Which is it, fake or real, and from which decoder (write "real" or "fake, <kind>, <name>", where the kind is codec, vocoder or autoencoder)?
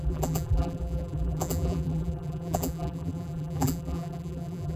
fake, vocoder, BigVGAN v2